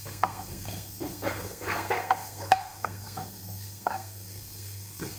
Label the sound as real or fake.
fake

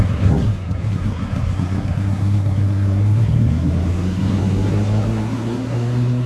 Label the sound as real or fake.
fake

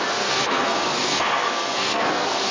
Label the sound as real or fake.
fake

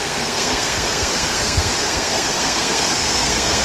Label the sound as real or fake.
fake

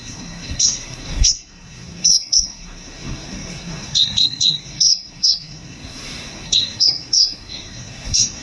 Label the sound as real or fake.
fake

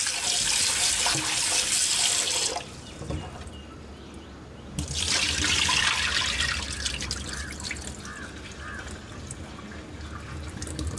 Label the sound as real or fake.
real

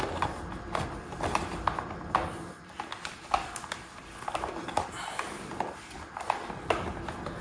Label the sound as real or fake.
real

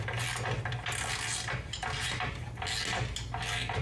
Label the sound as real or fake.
real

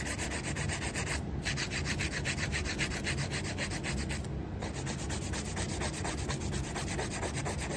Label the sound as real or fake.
real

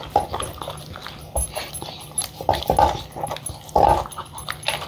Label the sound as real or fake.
real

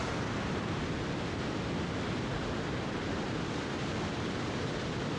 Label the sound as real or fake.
real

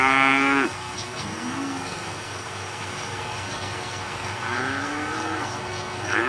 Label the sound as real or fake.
fake